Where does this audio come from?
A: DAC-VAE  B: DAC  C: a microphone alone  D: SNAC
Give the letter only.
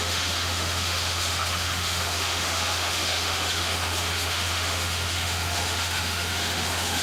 A